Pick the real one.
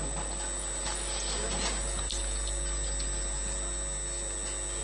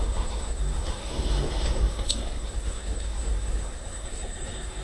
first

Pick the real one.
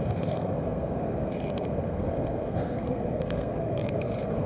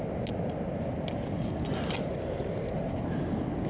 second